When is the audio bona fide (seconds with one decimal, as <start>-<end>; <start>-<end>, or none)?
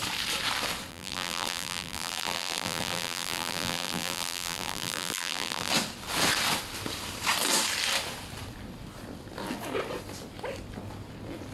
0.0-0.9; 5.7-11.5